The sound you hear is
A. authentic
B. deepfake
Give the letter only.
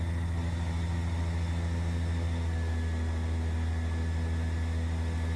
A